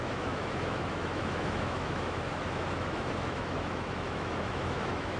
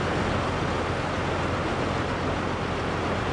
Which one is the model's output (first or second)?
first